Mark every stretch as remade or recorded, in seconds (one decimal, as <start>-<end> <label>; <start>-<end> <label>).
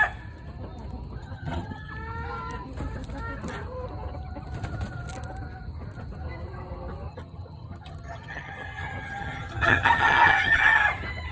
0.0-1.2 recorded; 1.2-1.9 remade; 1.9-7.1 recorded; 7.1-10.8 remade; 10.8-11.3 recorded